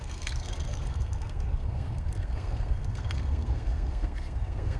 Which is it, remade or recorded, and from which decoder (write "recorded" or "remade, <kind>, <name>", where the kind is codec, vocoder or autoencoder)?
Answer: remade, codec, SNAC